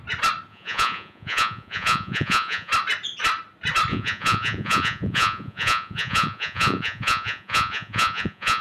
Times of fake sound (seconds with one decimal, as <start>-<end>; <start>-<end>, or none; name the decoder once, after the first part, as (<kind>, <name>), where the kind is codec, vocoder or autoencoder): 0.5-2.7 (vocoder, Vocos); 3.9-8.6